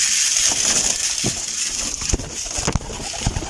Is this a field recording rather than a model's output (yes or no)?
yes